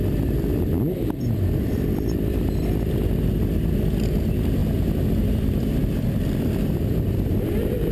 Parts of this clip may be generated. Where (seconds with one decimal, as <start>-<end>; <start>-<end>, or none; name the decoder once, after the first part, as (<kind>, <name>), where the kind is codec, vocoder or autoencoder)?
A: 0.0-4.6 (vocoder, BigVGAN v2); 5.4-7.9